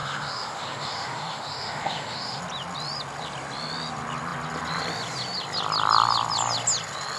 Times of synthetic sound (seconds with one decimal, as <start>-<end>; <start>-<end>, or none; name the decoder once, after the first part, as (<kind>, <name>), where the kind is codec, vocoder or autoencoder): 0.0-2.4 (autoencoder, DAC-VAE)